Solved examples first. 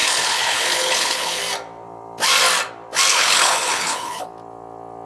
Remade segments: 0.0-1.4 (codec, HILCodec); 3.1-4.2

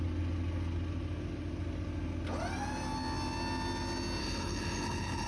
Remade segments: 4.2-5.3 (codec, HILCodec)

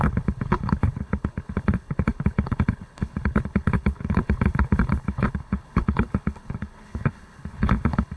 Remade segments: 0.0-8.2 (codec, HILCodec)